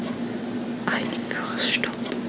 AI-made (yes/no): no